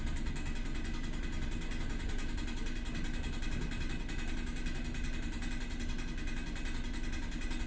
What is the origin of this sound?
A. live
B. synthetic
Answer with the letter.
A